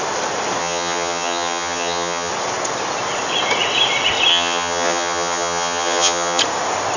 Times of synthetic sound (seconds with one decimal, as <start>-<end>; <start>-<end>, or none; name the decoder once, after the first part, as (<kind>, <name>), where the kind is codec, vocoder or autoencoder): 0.6-2.3 (vocoder, HiFi-GAN); 4.3-6.4